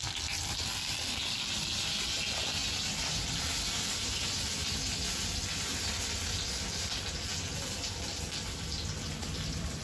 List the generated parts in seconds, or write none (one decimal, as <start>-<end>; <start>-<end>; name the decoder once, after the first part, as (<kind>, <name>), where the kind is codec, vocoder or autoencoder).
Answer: none